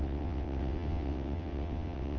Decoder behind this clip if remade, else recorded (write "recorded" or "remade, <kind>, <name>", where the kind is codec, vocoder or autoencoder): remade, vocoder, WaveNeXt